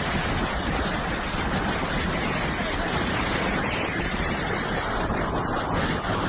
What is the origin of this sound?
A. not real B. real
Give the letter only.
B